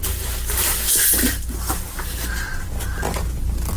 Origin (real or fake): real